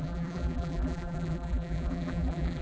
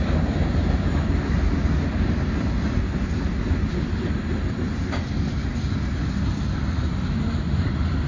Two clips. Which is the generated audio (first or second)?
first